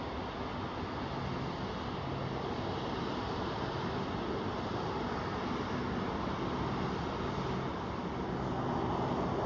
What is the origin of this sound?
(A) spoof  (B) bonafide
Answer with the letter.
B